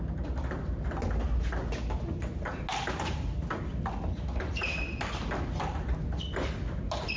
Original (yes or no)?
yes